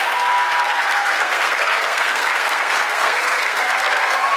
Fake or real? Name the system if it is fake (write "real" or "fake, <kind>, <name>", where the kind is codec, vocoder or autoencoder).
fake, codec, SNAC